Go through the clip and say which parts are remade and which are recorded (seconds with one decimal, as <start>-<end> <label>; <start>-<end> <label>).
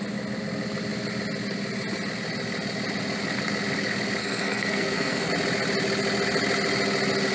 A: 0.0-4.2 recorded; 4.2-5.3 remade; 5.3-7.3 recorded